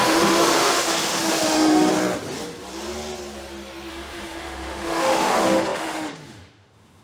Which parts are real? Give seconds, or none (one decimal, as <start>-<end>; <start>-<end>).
1.9-3.9